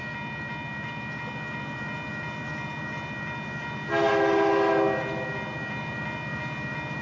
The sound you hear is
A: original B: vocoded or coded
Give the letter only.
A